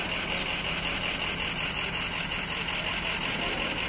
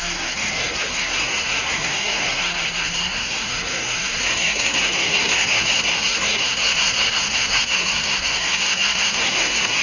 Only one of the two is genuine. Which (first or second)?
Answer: first